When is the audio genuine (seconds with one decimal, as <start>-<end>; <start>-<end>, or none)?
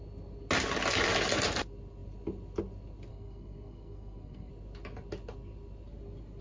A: 0.0-3.1; 4.5-6.4